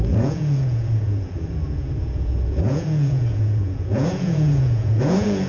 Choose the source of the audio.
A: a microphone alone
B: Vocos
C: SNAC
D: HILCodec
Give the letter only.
B